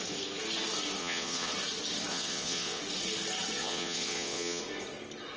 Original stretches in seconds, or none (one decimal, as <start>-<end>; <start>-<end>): 0.0-1.0; 1.5-2.1; 2.8-3.6; 4.6-5.4